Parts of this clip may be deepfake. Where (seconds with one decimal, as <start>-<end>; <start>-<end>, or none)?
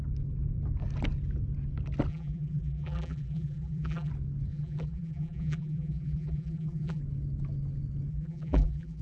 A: 2.1-4.1; 4.5-7.0; 8.1-9.0